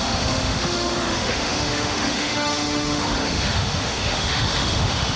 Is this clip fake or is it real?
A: fake